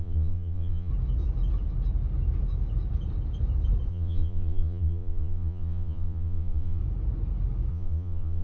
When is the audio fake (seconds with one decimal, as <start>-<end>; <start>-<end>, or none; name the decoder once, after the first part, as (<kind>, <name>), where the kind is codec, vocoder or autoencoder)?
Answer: 0.0-0.9 (vocoder, Vocos); 3.9-6.8; 7.7-8.4